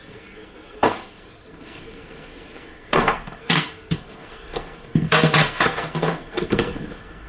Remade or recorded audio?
remade